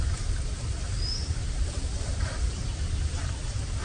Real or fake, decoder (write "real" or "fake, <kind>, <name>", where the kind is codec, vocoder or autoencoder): real